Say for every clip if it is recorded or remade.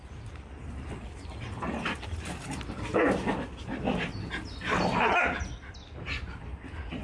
recorded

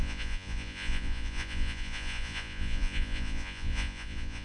remade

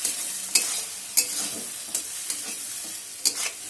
recorded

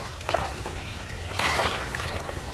remade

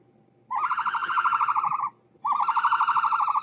recorded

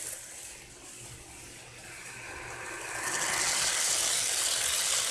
recorded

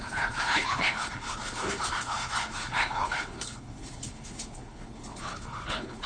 remade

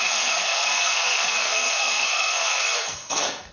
remade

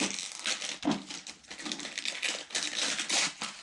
recorded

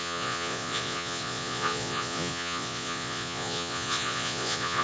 remade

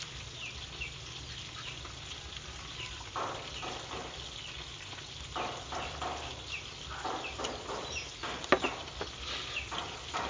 recorded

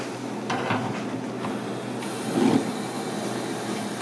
recorded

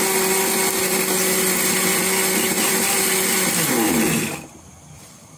recorded